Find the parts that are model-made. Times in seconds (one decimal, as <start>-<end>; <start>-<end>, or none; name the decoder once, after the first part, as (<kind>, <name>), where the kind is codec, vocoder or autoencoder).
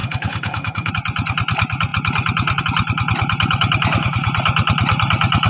0.0-0.9 (autoencoder, DAC-VAE)